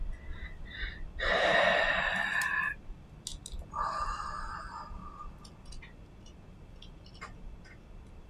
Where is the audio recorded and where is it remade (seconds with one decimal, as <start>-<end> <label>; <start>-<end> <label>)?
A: 0.0-8.3 recorded